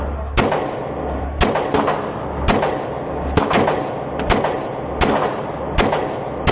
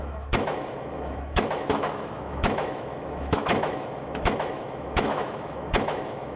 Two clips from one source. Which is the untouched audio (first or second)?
first